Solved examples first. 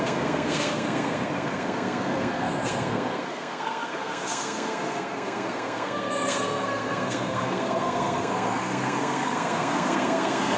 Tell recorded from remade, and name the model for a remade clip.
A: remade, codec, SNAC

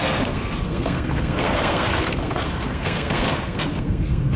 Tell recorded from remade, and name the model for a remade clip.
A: remade, codec, SNAC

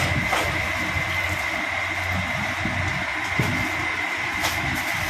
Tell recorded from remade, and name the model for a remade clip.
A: recorded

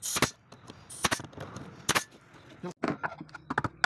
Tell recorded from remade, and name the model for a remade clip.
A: recorded